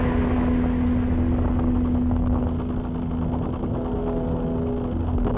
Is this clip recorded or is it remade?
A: recorded